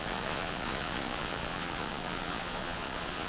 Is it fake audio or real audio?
fake